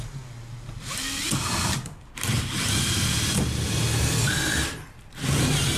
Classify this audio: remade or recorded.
recorded